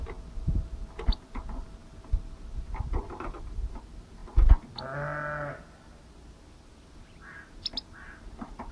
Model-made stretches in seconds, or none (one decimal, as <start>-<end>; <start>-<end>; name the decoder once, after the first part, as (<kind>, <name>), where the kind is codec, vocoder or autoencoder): none

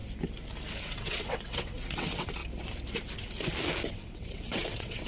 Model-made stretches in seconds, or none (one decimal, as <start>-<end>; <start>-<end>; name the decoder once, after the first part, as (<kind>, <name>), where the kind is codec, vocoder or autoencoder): 0.8-2.4 (vocoder, WaveNeXt); 3.9-5.1

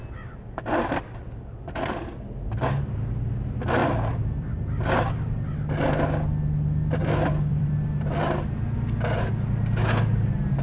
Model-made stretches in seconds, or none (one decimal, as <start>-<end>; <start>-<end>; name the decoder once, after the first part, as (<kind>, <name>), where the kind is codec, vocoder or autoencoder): 3.8-4.8 (vocoder, BigVGAN v2); 7.0-8.2

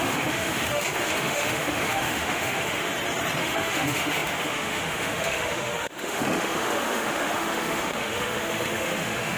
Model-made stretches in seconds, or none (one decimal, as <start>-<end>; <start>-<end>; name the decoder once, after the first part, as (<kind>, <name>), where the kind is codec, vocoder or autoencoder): 0.0-2.9 (autoencoder, DAC-VAE); 3.4-9.4

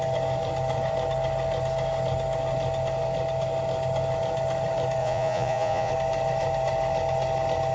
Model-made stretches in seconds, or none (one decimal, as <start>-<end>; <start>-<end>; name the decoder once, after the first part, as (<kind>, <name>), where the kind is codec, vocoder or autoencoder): 5.0-5.9 (vocoder, Vocos)